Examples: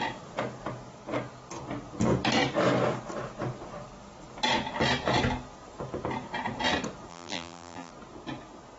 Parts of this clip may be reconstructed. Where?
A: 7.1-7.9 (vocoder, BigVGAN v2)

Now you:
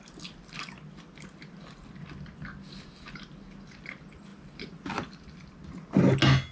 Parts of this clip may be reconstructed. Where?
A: none

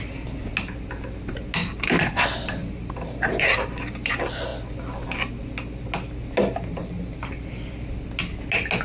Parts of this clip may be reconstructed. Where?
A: 1.6-2.2 (vocoder, BigVGAN v2); 2.6-4.1; 6.8-8.0